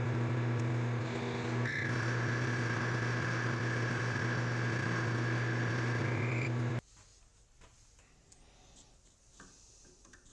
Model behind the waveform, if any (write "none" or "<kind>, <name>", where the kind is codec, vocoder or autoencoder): none